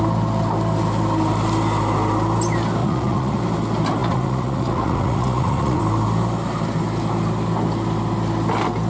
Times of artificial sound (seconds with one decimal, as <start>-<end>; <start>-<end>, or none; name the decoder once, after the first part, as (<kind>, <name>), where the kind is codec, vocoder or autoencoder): 2.8-3.4 (vocoder, Vocos); 4.0-5.8